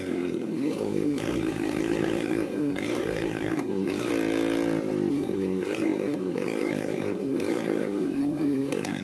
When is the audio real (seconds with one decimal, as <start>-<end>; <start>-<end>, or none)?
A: 4.1-5.1